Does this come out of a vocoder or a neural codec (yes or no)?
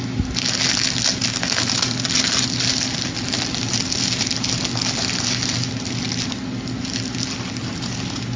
no